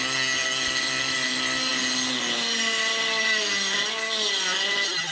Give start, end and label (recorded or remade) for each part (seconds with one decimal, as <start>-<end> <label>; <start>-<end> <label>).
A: 0.0-5.1 recorded